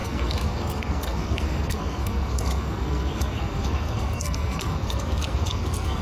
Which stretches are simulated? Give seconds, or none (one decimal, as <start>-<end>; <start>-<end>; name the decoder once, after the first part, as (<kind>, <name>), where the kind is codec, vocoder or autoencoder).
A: 0.0-6.0 (codec, SNAC)